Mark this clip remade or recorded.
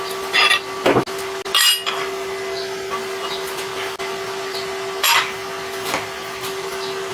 recorded